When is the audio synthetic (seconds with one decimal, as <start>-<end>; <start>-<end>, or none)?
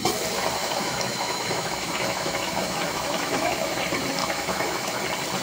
0.6-3.8; 4.2-5.0